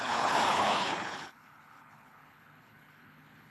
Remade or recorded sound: remade